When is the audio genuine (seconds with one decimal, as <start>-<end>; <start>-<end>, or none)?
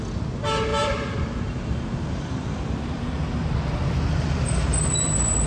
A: 0.0-0.7; 4.0-5.5